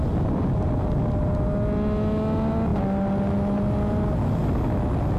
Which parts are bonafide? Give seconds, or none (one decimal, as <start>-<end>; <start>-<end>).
0.0-5.2